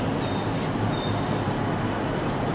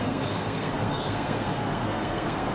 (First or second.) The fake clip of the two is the second